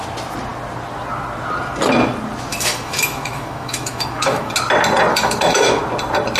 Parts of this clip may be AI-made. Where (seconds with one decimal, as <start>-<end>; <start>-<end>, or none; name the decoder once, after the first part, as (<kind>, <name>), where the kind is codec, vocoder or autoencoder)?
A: 2.5-4.5 (autoencoder, DAC-VAE); 5.1-5.8